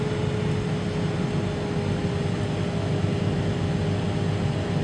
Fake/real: real